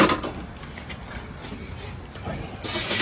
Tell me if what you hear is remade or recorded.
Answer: recorded